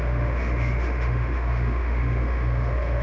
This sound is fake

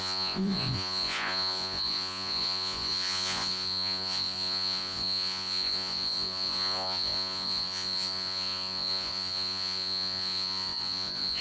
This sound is fake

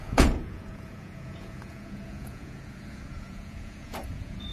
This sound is fake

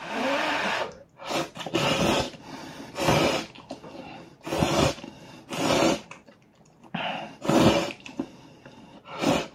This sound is real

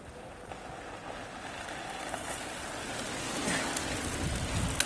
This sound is real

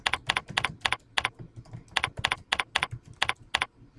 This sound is real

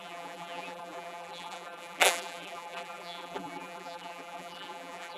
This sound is fake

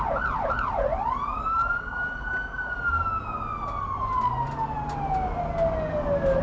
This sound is real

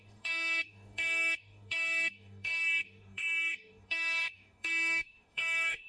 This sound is fake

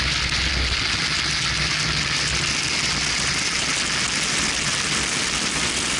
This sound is real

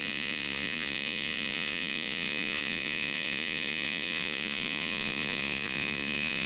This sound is fake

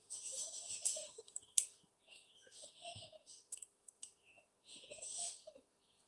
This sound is fake